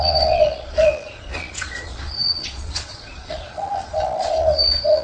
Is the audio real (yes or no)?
no